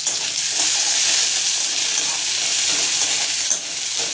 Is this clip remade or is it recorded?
recorded